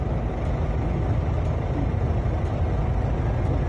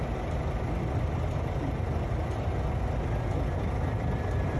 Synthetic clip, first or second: second